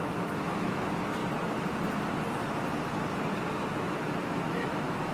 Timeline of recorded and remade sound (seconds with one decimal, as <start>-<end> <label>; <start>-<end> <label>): 0.0-1.2 remade; 1.2-3.7 recorded; 3.7-5.1 remade